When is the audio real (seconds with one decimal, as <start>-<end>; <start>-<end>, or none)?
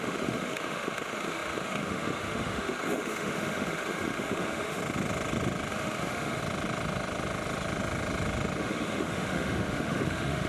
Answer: 4.8-5.7; 6.4-8.6